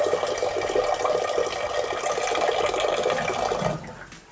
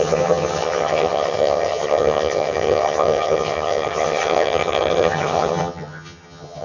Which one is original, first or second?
first